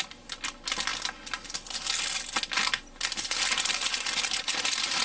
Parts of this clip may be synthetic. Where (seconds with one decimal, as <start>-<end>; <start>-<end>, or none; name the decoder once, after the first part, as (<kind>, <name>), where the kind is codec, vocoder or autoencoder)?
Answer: none